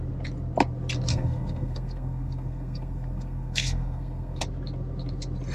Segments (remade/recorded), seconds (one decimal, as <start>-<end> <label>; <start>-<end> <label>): 0.0-1.1 recorded; 1.1-4.4 remade; 4.4-5.5 recorded